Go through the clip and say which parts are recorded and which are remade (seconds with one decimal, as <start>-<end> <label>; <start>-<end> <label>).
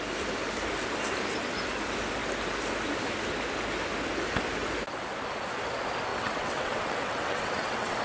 0.0-6.1 recorded; 6.1-8.0 remade